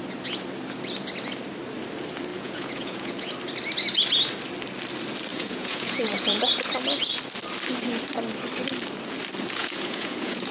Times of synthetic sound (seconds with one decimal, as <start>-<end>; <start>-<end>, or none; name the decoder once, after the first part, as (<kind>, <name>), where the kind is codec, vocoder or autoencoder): 2.3-3.1 (vocoder, Vocos); 5.3-6.5; 9.6-10.5

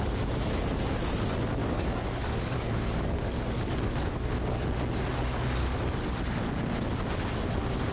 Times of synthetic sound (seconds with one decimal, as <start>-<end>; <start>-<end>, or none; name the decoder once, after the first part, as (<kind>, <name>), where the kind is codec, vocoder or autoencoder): 1.6-4.3 (codec, DAC); 5.2-6.7

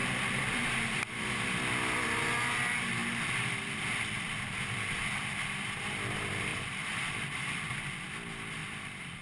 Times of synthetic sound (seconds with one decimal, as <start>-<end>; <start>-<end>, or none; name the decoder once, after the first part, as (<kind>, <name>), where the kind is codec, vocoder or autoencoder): 0.0-0.6 (vocoder, BigVGAN v2); 3.0-5.3; 6.5-7.7; 8.6-9.2

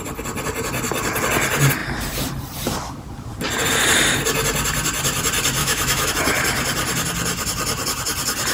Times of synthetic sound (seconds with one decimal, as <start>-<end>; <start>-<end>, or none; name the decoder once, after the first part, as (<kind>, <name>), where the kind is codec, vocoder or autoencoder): 5.6-6.1 (autoencoder, DAC-VAE)

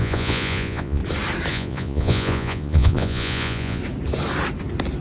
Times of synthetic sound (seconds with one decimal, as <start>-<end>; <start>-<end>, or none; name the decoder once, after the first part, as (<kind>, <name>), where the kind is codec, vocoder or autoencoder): 0.0-1.0 (vocoder, Vocos); 1.5-3.8

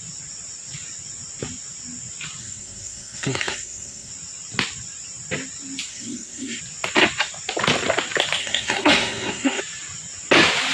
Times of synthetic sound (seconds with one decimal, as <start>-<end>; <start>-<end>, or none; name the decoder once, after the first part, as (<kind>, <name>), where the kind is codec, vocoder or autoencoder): 2.4-4.1 (codec, SNAC); 5.9-6.6; 8.4-9.6

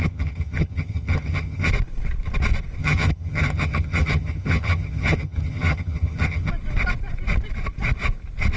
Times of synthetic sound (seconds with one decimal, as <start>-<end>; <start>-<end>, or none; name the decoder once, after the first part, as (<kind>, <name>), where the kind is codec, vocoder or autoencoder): 0.0-1.7 (vocoder, HiFi-GAN); 2.8-6.5